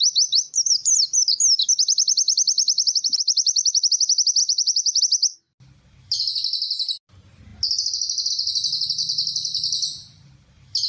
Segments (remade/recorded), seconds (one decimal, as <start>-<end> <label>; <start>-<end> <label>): 0.0-4.4 recorded; 4.4-5.0 remade; 5.0-9.0 recorded; 9.0-10.9 remade